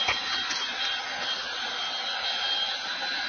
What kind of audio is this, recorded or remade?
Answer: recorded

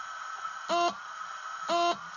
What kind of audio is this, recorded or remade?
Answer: recorded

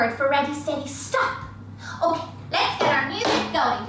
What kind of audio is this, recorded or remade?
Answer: recorded